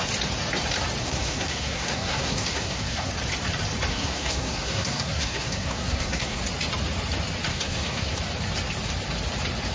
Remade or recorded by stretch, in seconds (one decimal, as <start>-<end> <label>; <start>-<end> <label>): 0.0-1.0 recorded; 1.0-3.1 remade; 3.1-3.9 recorded; 3.9-6.4 remade; 6.4-7.5 recorded; 7.5-8.2 remade; 8.2-9.7 recorded